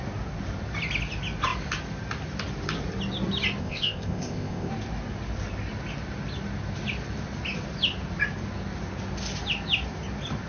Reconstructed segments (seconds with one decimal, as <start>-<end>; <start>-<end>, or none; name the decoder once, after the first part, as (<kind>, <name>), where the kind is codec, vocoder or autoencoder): 3.6-4.7 (codec, ZipCodec)